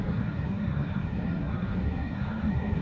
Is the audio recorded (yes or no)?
no